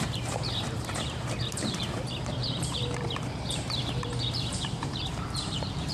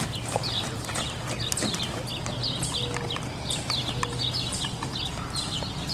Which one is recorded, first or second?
second